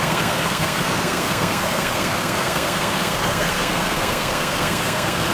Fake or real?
fake